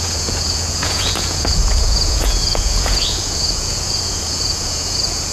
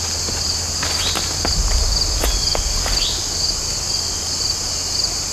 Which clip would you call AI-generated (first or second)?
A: first